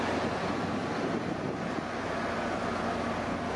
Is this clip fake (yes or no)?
no